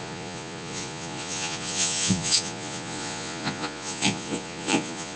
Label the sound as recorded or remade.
remade